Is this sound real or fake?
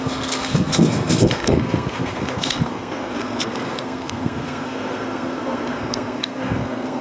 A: fake